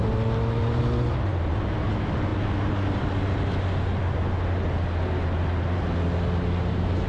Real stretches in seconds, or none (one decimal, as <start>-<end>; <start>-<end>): 0.0-7.1